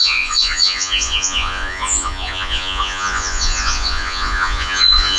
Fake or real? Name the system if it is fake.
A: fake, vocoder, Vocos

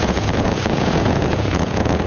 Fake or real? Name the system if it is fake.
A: fake, vocoder, Vocos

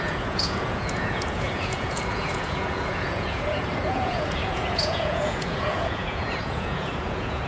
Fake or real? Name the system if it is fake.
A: fake, vocoder, Vocos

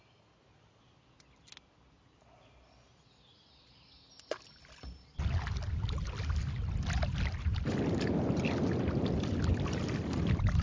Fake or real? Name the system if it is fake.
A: real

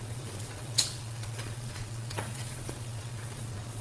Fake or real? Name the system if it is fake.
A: fake, vocoder, Vocos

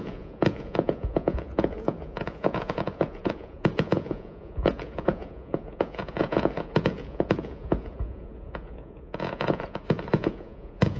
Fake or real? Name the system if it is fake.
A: fake, vocoder, Vocos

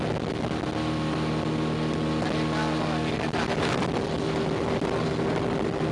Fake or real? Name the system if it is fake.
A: real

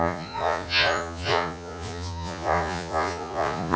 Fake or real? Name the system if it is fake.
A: fake, vocoder, Vocos